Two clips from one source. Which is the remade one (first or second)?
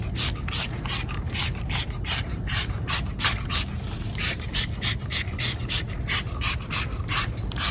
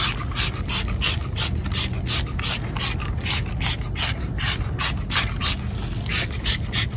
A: first